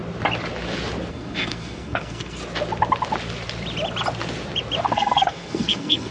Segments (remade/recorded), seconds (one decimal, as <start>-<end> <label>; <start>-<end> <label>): 0.0-1.1 recorded; 1.1-2.4 remade; 2.4-4.8 recorded; 4.8-6.1 remade